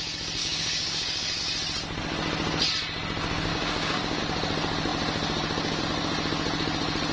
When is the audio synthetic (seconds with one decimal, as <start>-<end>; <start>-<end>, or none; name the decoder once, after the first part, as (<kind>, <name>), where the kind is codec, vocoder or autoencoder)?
0.4-1.4 (codec, DAC); 3.5-4.2